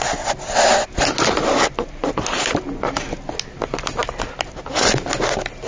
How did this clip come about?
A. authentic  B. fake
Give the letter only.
A